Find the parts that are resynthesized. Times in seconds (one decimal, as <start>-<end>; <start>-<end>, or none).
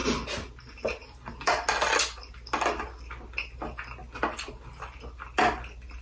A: none